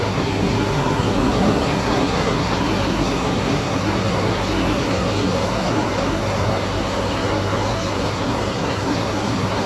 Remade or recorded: remade